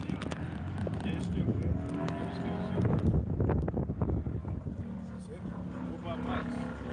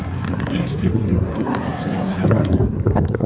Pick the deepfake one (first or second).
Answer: second